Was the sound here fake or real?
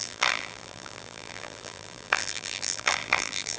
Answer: fake